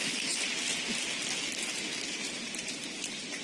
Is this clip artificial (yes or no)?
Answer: no